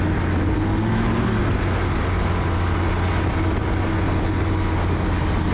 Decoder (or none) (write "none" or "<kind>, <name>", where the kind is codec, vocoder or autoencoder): none